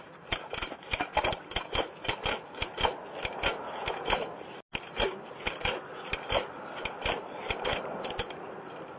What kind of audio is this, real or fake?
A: real